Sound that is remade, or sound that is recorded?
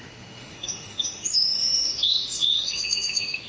remade